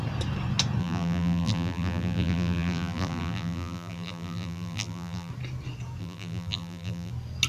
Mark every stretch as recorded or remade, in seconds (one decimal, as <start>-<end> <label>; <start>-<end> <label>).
0.0-0.8 recorded; 0.8-5.3 remade; 5.3-6.0 recorded; 6.0-7.1 remade; 7.1-7.5 recorded